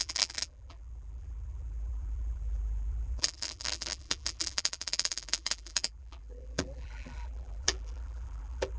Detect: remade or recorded remade